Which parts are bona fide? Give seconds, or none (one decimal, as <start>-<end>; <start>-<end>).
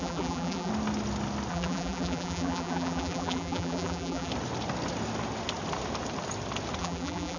0.7-1.5; 4.3-6.8